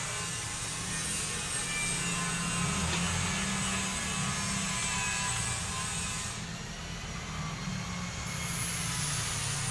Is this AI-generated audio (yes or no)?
no